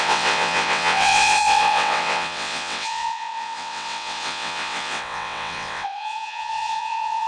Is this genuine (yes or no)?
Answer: no